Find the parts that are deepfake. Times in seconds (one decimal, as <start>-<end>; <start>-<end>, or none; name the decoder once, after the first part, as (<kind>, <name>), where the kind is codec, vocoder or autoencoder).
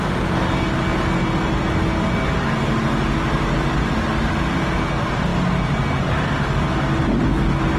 none